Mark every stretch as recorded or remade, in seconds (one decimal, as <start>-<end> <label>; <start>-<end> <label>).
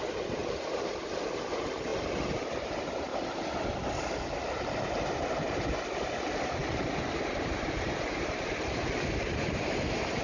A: 0.0-3.1 remade; 3.1-4.5 recorded; 4.5-6.6 remade; 6.6-7.1 recorded; 7.1-10.2 remade